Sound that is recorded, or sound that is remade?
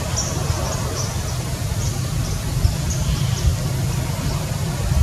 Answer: recorded